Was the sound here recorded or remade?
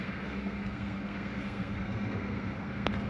remade